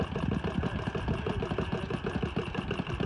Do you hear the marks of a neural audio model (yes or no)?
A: no